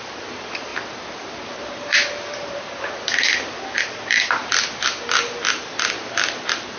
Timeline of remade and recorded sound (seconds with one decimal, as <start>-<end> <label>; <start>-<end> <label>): 0.0-6.8 recorded